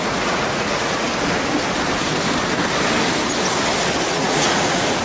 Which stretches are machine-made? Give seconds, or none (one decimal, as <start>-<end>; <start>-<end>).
0.0-1.1; 4.1-5.0